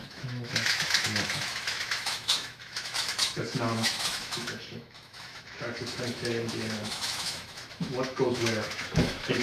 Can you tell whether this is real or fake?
fake